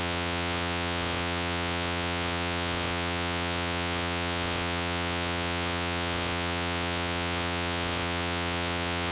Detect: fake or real fake